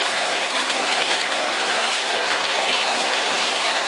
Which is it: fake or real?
fake